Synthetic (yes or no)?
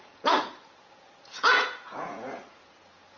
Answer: yes